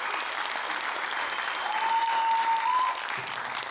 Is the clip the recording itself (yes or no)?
yes